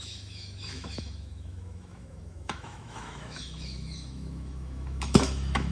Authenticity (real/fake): fake